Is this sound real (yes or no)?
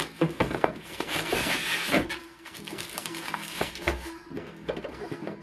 no